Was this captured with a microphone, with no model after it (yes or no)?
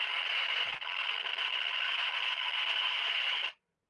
yes